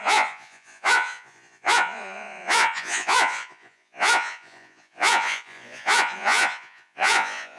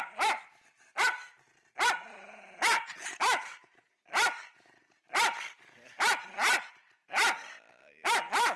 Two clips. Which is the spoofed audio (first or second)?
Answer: first